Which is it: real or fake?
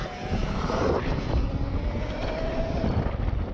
real